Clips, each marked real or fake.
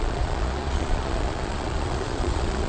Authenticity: fake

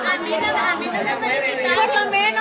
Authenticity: real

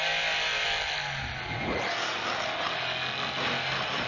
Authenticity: real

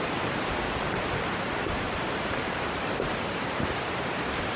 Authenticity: fake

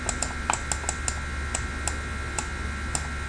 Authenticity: real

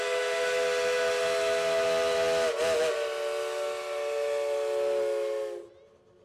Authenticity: real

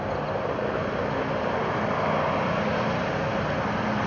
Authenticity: real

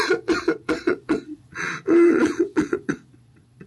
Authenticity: fake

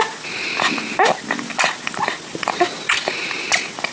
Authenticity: real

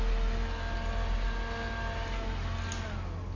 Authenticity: real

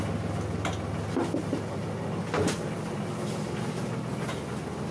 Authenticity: real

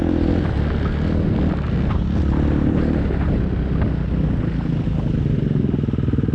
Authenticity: real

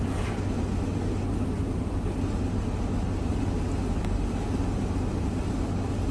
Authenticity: real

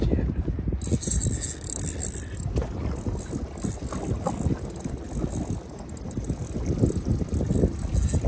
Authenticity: real